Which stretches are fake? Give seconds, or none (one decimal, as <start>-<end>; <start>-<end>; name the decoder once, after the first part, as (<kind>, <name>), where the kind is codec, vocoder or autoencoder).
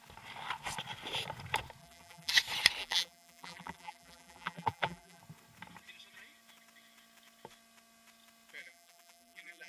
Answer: 1.8-2.3 (vocoder, BigVGAN v2); 2.8-5.2; 8.6-9.7